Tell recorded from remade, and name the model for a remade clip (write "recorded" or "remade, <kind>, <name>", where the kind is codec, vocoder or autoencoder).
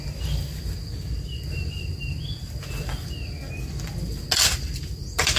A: recorded